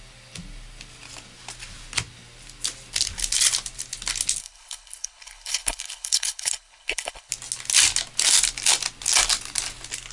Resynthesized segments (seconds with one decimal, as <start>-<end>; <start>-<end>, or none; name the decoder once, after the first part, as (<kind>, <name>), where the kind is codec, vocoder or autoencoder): 4.4-7.3 (codec, HILCodec)